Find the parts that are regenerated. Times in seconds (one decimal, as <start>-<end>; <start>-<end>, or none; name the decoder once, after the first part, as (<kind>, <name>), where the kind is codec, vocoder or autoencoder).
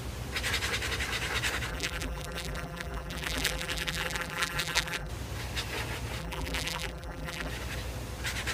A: 1.7-5.1 (vocoder, BigVGAN v2); 6.2-7.5